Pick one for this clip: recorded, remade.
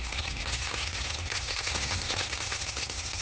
remade